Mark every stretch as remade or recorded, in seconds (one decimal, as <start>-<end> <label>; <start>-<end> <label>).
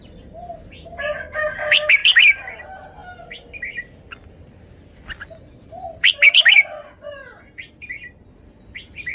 0.0-9.1 recorded